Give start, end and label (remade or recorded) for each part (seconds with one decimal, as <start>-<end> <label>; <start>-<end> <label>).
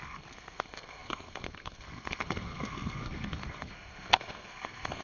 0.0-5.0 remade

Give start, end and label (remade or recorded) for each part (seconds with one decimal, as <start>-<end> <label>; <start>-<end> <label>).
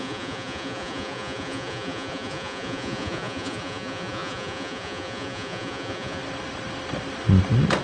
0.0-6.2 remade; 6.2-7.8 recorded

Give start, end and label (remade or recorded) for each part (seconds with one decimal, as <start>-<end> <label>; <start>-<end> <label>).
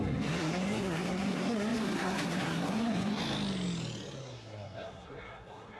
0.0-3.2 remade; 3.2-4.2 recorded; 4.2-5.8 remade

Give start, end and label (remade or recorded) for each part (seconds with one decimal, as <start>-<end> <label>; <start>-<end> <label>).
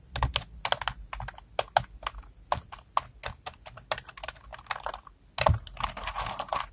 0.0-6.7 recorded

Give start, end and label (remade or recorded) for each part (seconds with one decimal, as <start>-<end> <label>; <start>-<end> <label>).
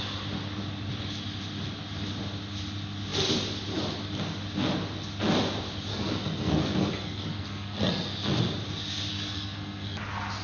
0.0-5.9 recorded; 5.9-8.1 remade; 8.1-9.1 recorded; 9.1-10.0 remade; 10.0-10.4 recorded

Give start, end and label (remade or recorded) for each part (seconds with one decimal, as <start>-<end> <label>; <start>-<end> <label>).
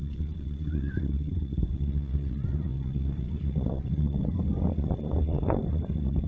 0.0-6.3 remade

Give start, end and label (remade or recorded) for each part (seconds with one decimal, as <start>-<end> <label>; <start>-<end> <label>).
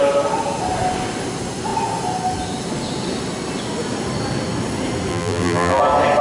0.0-5.1 recorded; 5.1-5.8 remade; 5.8-6.2 recorded